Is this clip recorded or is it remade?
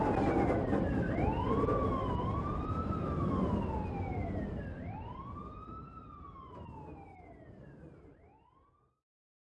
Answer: recorded